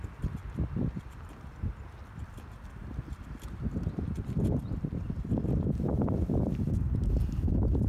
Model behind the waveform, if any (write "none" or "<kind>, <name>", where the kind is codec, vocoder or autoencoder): none